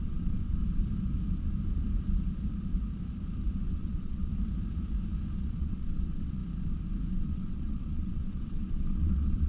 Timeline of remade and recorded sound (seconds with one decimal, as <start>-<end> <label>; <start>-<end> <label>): 0.0-0.6 remade; 0.6-3.7 recorded; 3.7-4.3 remade; 4.3-5.4 recorded; 5.4-6.4 remade; 6.4-7.1 recorded; 7.1-9.5 remade